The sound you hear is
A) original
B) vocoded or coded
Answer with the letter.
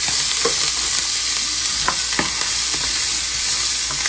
A